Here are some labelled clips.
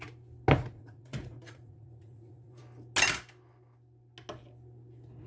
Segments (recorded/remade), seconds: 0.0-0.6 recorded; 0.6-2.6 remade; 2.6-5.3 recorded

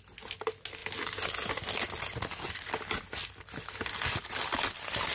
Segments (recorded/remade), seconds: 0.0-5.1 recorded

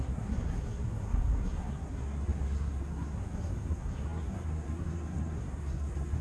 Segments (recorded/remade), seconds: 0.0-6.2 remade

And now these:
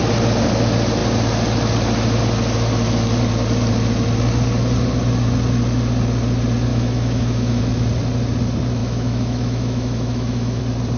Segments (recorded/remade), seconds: 0.0-6.7 recorded; 6.7-7.6 remade; 7.6-8.8 recorded; 8.8-10.6 remade; 10.6-11.0 recorded